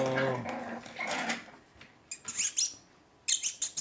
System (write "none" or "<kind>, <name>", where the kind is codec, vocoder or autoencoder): none